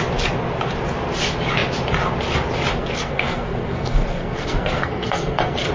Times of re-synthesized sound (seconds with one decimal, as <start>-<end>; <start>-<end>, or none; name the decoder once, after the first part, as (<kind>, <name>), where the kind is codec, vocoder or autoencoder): 2.7-5.7 (codec, SNAC)